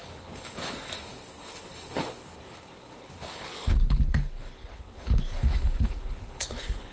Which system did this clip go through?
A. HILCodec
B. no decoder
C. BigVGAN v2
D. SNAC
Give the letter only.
A